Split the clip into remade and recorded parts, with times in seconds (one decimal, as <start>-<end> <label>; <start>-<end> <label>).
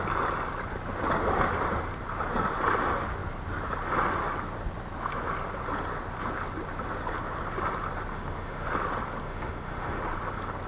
0.0-8.1 recorded; 8.1-8.7 remade; 8.7-9.2 recorded; 9.2-10.0 remade; 10.0-10.7 recorded